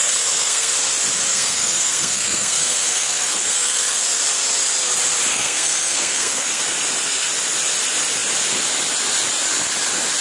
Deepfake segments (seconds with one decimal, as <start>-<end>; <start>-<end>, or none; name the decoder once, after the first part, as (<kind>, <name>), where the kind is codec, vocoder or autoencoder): 0.0-0.7 (codec, SNAC); 1.3-4.2; 5.3-6.6